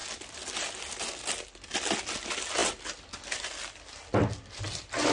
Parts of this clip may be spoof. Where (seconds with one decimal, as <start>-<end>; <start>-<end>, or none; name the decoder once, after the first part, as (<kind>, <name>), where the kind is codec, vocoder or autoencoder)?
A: none